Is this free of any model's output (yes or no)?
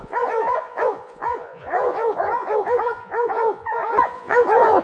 no